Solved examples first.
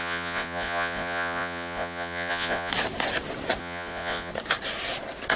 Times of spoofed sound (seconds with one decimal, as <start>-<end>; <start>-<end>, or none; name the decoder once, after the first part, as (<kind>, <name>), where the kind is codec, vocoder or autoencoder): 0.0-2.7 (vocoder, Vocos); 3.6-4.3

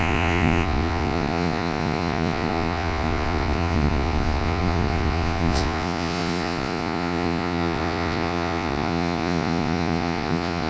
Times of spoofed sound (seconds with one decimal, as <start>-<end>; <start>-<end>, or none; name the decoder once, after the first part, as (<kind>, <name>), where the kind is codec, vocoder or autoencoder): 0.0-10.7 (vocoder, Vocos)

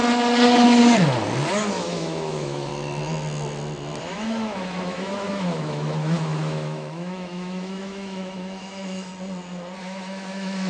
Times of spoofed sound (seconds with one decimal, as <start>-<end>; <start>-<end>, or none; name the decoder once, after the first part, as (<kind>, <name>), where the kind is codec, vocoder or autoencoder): 1.7-2.7 (autoencoder, DAC-VAE); 4.0-9.1; 9.8-10.7

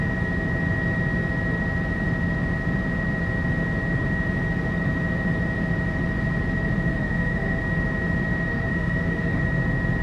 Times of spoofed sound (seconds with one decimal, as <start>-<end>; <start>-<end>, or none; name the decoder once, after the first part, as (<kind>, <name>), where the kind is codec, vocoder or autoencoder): 6.9-7.6 (autoencoder, DAC-VAE); 8.5-9.4

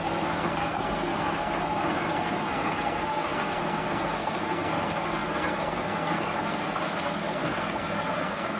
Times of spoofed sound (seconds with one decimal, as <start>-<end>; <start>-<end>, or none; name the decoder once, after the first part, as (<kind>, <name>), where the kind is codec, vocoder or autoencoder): 0.0-8.6 (codec, SNAC)

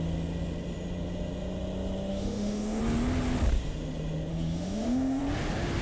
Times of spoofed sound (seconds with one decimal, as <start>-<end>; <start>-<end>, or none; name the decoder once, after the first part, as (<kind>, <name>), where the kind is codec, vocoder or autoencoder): 2.1-2.8 (autoencoder, DAC-VAE); 4.3-5.2